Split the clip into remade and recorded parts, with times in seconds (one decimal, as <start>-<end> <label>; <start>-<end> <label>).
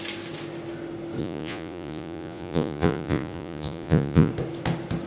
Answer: 0.0-1.2 recorded; 1.2-4.3 remade; 4.3-5.1 recorded